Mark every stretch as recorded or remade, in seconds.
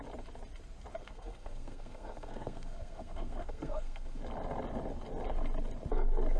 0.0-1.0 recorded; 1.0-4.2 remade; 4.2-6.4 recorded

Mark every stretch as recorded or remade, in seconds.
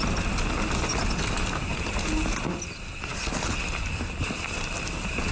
0.0-5.3 recorded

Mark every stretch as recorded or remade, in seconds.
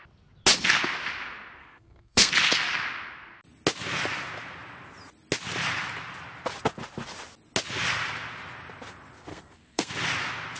0.0-1.6 recorded; 1.6-2.3 remade; 2.3-9.3 recorded; 9.3-9.9 remade; 9.9-10.6 recorded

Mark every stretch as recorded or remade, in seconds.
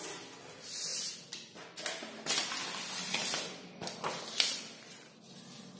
0.0-5.8 recorded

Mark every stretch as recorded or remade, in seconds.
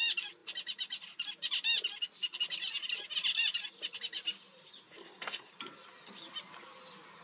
0.0-5.0 recorded; 5.0-5.5 remade; 5.5-7.2 recorded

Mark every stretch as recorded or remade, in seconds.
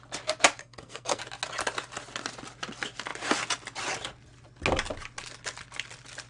0.0-0.6 recorded; 0.6-1.2 remade; 1.2-6.3 recorded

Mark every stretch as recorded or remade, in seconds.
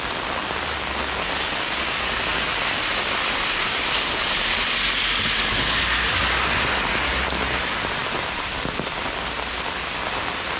0.0-10.6 recorded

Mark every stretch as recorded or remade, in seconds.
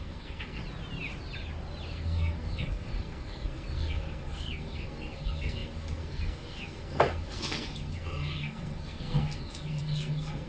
0.0-0.6 remade; 0.6-1.9 recorded; 1.9-10.5 remade